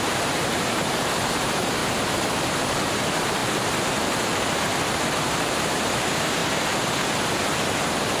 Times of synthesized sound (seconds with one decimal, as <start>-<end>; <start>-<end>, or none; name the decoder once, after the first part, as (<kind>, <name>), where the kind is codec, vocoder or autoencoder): 0.0-1.8 (vocoder, BigVGAN v2); 2.9-6.4

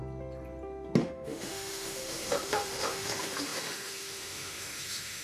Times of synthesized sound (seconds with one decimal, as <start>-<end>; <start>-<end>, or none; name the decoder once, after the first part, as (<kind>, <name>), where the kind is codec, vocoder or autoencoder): 1.0-5.2 (autoencoder, DAC-VAE)

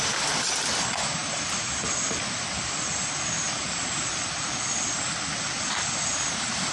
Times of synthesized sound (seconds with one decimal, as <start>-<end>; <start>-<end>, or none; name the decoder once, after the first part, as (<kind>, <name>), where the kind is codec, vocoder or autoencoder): 1.2-5.1 (vocoder, BigVGAN v2)

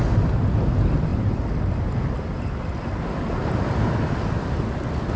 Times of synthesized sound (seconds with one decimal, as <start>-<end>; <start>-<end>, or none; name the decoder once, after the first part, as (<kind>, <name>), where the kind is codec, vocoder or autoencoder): none

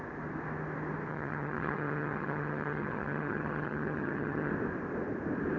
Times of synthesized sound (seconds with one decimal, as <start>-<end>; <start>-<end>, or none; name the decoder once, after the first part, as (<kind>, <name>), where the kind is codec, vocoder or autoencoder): 1.1-4.5 (vocoder, HiFi-GAN)